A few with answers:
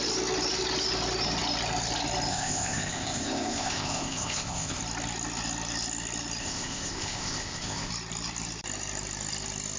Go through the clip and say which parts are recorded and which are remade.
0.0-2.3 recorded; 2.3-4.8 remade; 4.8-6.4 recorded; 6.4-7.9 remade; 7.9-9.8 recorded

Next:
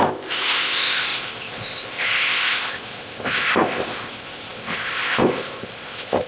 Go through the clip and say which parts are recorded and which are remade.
0.0-6.3 remade